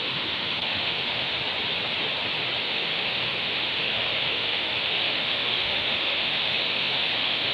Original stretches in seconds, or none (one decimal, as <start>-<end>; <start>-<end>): 1.3-2.6